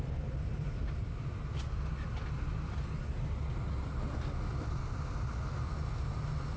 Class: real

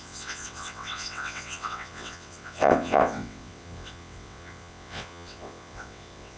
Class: fake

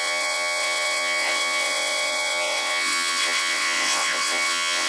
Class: fake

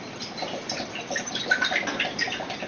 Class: real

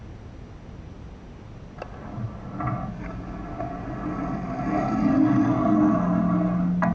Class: real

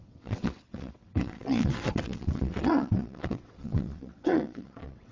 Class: fake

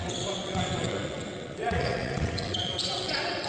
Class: fake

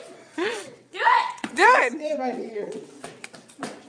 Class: fake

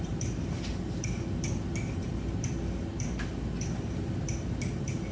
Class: real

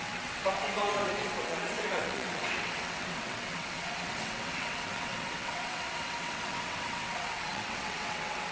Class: fake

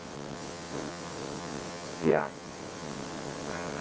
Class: fake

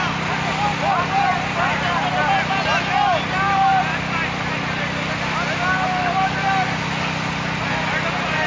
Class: real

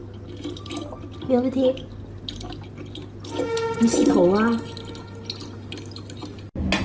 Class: real